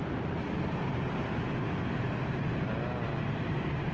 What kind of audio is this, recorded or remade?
recorded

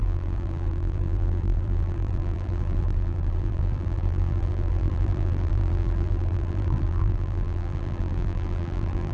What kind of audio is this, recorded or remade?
remade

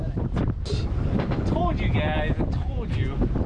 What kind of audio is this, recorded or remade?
recorded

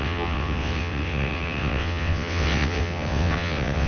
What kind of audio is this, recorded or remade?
remade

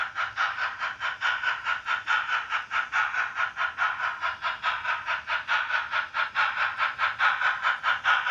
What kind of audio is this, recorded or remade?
recorded